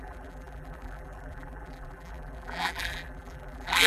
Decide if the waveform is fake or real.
fake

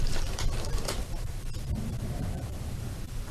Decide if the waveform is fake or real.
fake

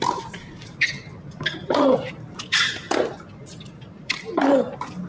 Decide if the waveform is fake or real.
fake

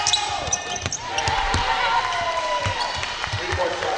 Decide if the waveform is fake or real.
fake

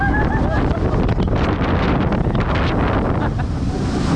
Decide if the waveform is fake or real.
real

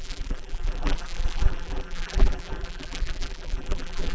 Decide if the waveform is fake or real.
fake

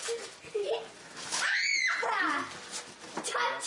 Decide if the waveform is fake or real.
real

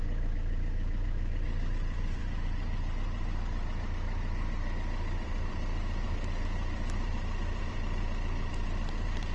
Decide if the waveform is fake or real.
fake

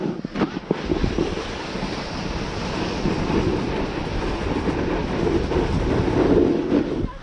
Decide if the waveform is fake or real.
real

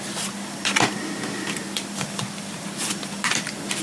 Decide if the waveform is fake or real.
fake